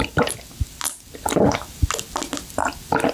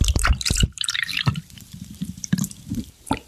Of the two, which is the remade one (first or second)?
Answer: second